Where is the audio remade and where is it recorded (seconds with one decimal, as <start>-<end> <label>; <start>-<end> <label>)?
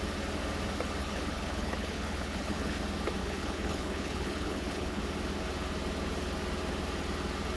0.0-1.0 recorded; 1.0-2.8 remade; 2.8-3.2 recorded; 3.2-5.0 remade; 5.0-7.6 recorded